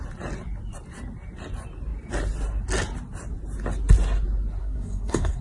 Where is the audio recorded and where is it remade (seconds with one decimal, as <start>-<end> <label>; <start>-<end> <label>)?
0.0-4.6 recorded; 4.6-5.4 remade